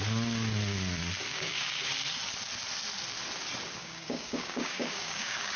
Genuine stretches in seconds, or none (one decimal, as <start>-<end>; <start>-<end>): 0.0-1.3; 1.9-3.8